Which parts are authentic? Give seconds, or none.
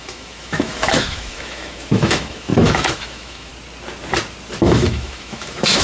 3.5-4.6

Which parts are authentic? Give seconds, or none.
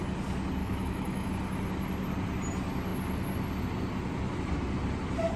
0.0-0.6; 1.3-5.4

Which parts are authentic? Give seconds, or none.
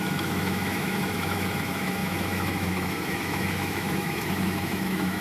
none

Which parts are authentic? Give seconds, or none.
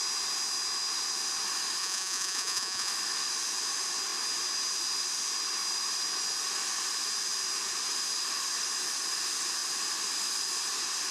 0.0-1.8; 2.9-11.1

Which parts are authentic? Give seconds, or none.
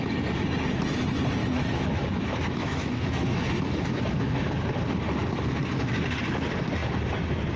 0.0-1.4; 4.5-7.6